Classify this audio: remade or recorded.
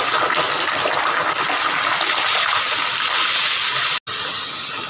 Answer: recorded